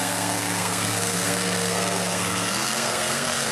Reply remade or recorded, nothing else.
remade